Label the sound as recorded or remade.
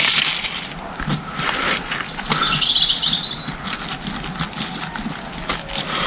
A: recorded